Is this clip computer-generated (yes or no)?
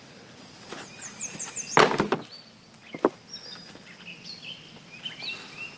no